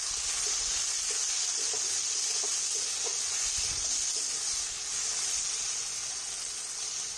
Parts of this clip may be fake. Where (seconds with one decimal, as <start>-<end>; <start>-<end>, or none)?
none